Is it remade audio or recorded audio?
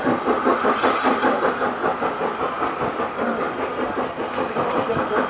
recorded